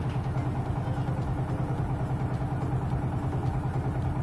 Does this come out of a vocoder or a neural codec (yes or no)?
no